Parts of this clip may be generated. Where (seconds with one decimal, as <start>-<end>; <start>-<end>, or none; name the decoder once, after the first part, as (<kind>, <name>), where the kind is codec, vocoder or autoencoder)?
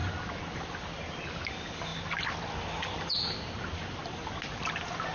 none